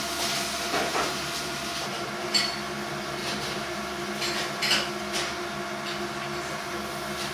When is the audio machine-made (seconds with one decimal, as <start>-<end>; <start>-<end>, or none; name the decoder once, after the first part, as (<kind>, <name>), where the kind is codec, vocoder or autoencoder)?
0.9-2.1 (vocoder, BigVGAN v2); 3.2-3.8